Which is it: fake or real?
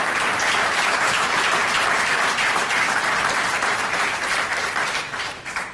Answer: fake